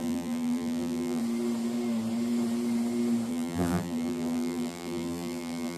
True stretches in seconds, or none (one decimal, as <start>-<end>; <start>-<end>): 1.2-3.3